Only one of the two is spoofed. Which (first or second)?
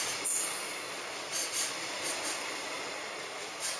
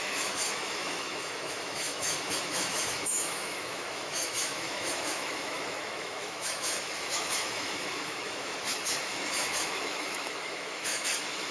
second